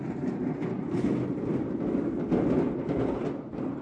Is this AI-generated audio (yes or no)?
no